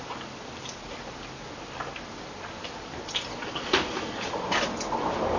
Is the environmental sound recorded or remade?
recorded